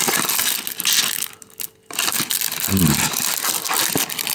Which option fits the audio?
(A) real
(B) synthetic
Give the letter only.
A